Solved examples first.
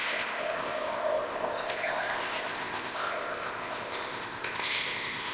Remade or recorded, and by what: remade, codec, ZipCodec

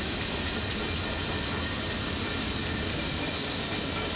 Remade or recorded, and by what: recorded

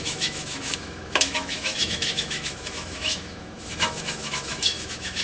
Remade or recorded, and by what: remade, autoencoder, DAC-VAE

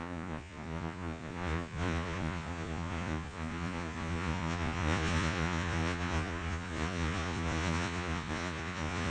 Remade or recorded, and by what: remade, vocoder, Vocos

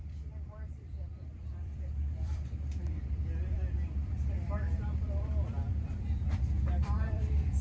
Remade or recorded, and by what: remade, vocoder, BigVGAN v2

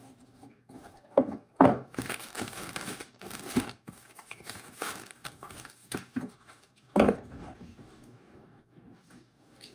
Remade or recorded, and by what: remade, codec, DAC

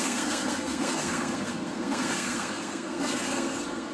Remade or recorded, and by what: remade, codec, SNAC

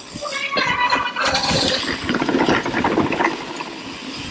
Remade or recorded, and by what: recorded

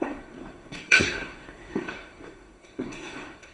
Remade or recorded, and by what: remade, codec, SNAC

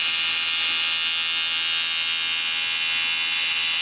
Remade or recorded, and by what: recorded